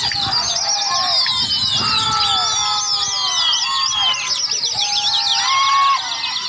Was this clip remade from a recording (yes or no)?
no